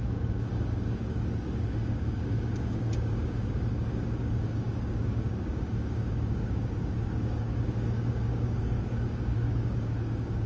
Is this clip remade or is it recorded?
remade